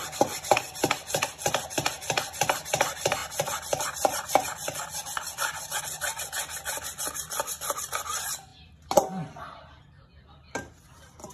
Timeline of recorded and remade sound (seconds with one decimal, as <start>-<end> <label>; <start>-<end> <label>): 0.0-11.3 recorded